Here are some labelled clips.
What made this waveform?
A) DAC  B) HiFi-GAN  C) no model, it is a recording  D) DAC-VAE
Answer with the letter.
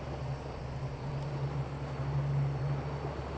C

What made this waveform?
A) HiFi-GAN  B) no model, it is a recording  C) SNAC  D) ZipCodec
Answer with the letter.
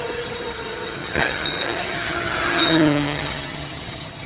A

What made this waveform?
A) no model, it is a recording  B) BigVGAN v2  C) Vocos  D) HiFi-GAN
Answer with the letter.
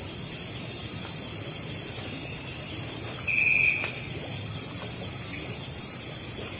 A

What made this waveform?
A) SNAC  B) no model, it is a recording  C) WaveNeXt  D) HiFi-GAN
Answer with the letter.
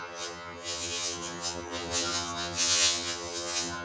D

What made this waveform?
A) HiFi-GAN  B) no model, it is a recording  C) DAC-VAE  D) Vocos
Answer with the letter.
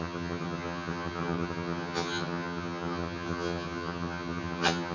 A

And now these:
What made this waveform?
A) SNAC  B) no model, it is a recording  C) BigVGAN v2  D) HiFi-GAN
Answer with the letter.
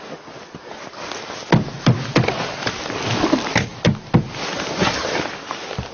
B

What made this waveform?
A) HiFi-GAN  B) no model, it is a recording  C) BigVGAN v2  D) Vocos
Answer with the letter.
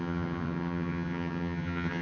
A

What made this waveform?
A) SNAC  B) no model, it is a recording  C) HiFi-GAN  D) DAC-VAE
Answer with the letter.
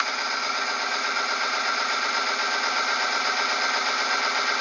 B